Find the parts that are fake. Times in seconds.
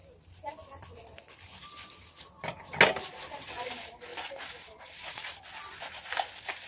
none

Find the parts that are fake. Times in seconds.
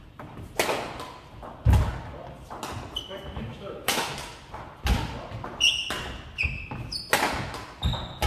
3.5-4.1 (autoencoder, DAC-VAE)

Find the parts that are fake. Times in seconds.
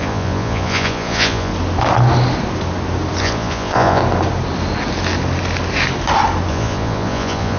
0.0-1.5 (vocoder, Vocos); 3.2-4.0; 6.5-7.6